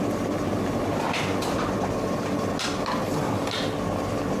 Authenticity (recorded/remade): recorded